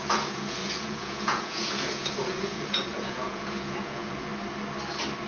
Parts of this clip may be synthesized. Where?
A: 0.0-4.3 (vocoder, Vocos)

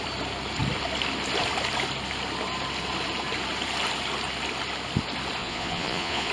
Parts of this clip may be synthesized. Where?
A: 5.4-6.3 (vocoder, Vocos)

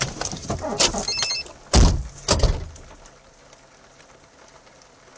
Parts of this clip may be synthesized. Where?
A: none